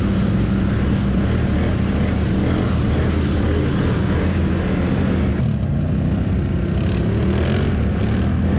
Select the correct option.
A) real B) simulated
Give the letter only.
A